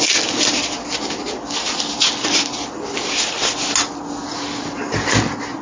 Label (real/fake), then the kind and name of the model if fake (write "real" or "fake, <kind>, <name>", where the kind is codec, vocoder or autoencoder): real